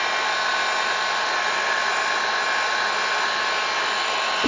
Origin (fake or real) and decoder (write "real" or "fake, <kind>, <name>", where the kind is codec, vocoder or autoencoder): real